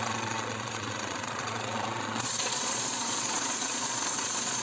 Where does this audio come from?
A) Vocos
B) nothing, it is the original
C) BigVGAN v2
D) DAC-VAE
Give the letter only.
A